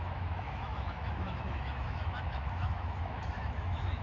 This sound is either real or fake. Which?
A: fake